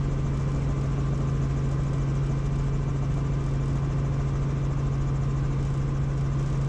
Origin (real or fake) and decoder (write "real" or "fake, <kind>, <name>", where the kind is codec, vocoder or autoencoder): real